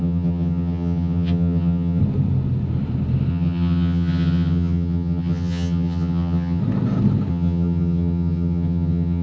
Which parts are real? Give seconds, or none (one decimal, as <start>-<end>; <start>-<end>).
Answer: 2.0-3.3; 6.6-7.3